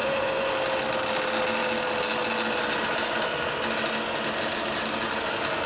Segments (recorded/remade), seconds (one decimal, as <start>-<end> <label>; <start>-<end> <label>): 0.0-0.5 remade; 0.5-5.7 recorded